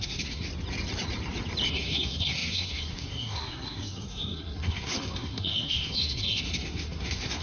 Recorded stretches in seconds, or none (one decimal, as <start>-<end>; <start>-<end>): 0.5-1.7